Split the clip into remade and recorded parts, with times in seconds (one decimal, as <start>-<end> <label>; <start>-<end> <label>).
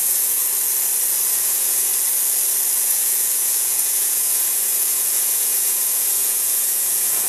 0.0-0.4 remade; 0.4-1.3 recorded; 1.3-1.9 remade; 1.9-2.8 recorded; 2.8-7.3 remade